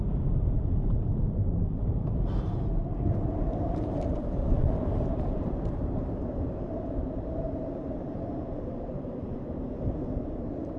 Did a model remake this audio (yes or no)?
yes